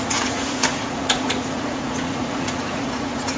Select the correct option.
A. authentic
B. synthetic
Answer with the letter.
B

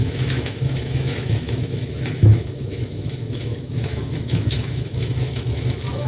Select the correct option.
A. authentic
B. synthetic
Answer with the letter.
B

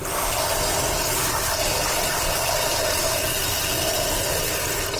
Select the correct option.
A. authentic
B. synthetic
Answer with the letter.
A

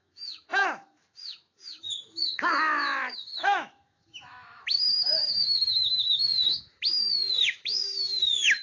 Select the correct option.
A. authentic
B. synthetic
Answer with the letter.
B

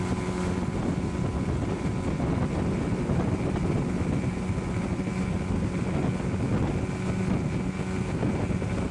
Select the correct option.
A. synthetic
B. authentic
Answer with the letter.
B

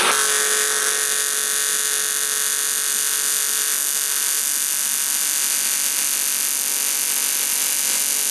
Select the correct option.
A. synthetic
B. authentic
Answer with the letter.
B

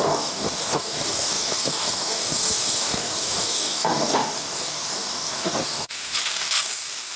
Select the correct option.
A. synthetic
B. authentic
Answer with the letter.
A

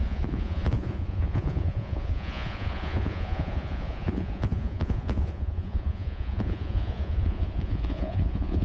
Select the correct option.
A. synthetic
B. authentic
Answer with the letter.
A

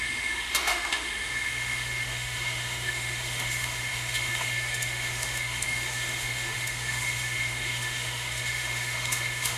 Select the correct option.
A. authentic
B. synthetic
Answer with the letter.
B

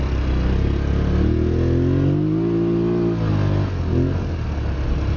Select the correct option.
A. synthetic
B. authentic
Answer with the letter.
B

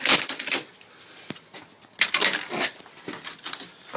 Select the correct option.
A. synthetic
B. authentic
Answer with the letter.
B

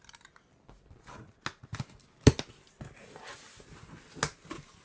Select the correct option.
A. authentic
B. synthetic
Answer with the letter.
A